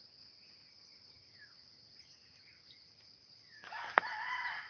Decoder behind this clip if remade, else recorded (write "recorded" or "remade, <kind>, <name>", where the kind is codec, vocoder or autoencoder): recorded